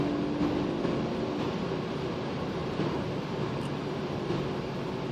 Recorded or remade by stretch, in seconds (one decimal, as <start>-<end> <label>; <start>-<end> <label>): 0.0-5.1 recorded